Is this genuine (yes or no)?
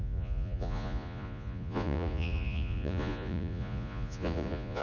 no